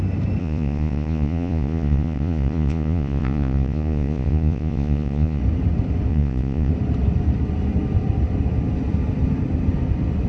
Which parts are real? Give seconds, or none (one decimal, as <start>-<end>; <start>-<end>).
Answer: 0.0-0.4; 5.4-6.1; 6.7-10.3